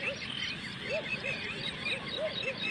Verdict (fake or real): real